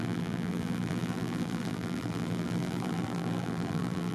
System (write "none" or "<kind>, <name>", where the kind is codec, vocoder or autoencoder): vocoder, BigVGAN v2